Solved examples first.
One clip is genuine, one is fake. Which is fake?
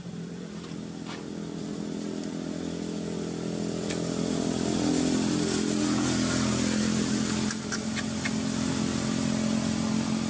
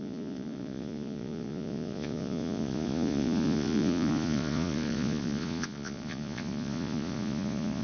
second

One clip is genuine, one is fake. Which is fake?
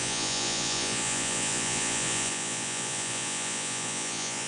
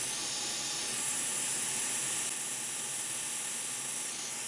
first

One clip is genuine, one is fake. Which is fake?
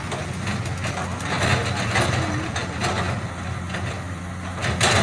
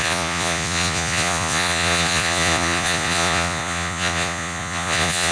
second